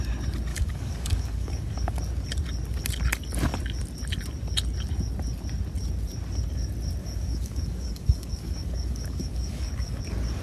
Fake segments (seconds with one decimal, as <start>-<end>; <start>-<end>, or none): 0.5-2.0; 7.0-10.0